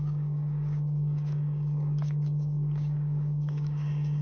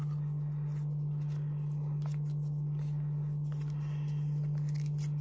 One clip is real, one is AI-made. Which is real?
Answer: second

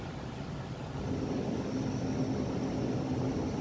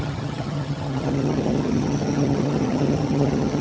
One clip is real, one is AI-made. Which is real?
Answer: first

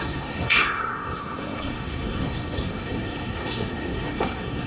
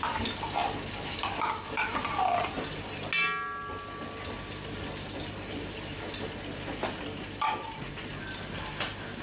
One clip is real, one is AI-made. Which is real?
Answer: second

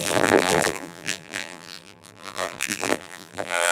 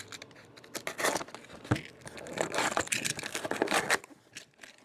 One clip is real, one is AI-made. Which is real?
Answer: second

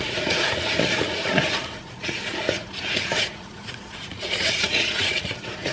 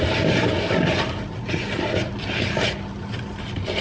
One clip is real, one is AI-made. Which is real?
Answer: second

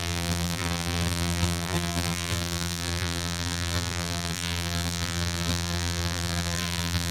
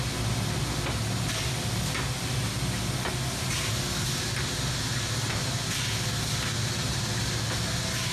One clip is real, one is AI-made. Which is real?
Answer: second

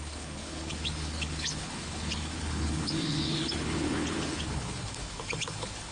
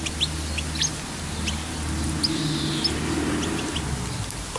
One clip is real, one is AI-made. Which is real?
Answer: second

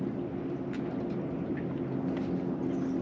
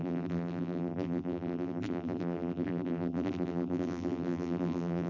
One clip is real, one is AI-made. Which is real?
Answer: first